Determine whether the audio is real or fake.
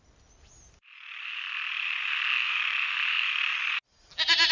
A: real